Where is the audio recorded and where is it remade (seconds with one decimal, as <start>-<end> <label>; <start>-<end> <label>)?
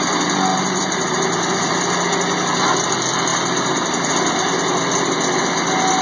0.0-0.5 recorded; 0.5-1.7 remade; 1.7-3.3 recorded; 3.3-4.1 remade; 4.1-6.0 recorded